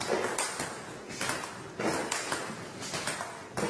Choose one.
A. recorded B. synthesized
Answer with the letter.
A